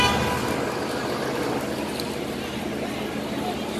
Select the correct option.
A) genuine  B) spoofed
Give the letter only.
A